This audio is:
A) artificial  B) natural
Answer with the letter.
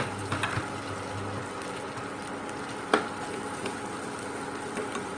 B